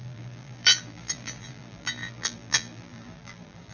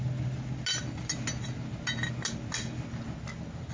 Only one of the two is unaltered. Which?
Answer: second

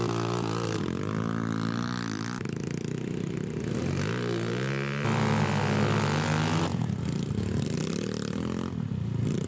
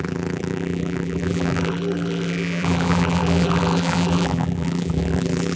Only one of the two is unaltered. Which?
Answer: first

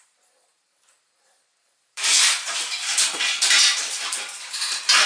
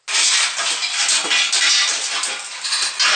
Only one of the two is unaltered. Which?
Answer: second